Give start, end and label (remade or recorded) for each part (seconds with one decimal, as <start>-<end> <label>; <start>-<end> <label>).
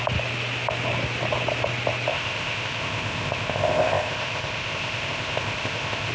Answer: 0.0-2.1 recorded; 2.1-6.1 remade